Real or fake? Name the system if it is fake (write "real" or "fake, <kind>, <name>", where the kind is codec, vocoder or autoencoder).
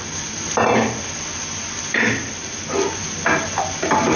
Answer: real